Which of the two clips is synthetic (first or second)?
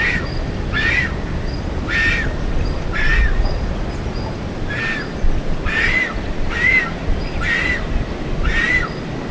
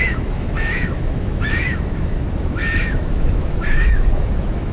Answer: second